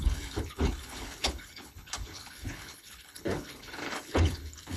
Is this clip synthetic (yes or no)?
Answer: yes